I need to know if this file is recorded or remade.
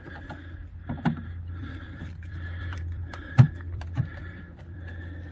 remade